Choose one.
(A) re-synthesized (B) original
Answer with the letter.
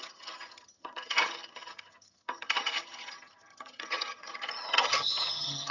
A